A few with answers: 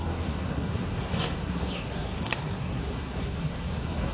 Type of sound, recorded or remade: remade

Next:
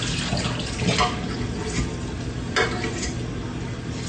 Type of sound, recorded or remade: recorded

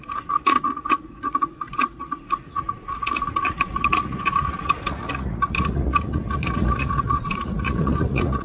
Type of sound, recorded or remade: remade